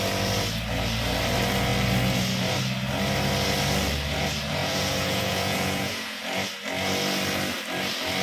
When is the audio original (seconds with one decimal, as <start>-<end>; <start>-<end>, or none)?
0.0-4.6; 6.2-8.2